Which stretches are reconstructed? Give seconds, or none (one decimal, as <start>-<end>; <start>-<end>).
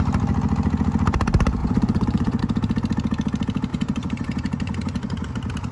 1.6-2.4; 3.7-5.3